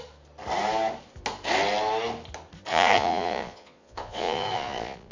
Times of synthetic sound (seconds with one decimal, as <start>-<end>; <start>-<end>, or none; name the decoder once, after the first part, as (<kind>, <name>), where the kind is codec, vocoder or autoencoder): 2.7-5.1 (vocoder, Vocos)

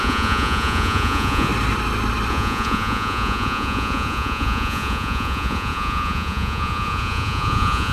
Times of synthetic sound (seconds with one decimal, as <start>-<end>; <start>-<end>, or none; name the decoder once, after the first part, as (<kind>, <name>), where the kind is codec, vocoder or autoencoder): 0.0-1.5 (vocoder, Vocos); 2.3-7.9

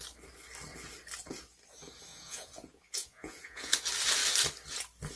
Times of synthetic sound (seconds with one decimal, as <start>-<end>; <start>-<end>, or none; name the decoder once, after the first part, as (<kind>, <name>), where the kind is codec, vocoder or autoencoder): 2.1-3.8 (vocoder, Vocos)

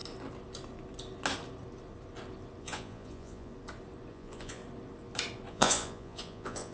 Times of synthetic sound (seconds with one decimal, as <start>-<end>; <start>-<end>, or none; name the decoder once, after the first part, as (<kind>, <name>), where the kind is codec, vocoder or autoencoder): 2.6-3.5 (vocoder, Vocos); 4.1-4.6; 5.5-6.7

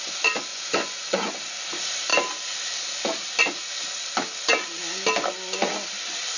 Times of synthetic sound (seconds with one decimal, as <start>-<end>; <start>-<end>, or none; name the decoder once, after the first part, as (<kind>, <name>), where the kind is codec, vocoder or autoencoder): 0.5-1.3 (vocoder, Vocos)

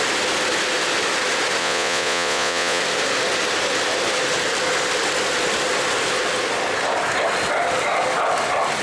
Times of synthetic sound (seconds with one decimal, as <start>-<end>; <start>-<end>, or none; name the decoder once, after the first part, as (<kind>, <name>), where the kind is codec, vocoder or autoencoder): 1.6-2.8 (vocoder, Vocos)